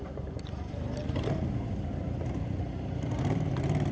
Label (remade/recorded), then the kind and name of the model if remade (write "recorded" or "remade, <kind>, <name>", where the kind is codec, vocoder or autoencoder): remade, vocoder, BigVGAN v2